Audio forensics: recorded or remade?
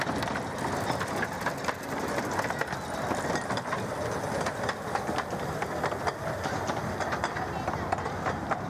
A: recorded